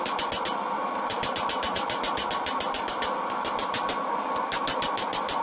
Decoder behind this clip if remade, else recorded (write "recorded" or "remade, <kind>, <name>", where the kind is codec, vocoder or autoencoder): recorded